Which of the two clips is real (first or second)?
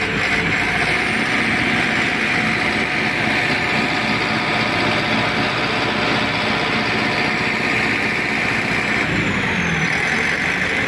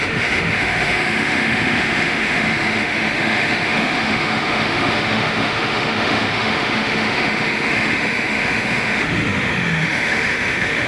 first